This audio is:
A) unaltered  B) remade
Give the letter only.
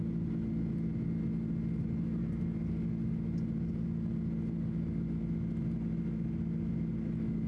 A